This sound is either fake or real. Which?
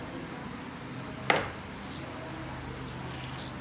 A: real